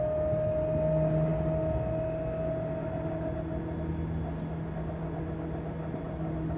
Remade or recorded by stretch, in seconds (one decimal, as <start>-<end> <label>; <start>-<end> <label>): 0.0-6.6 recorded